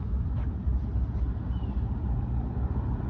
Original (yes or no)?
yes